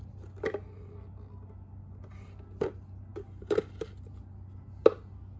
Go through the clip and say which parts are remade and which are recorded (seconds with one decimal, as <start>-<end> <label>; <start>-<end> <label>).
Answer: 0.0-5.4 recorded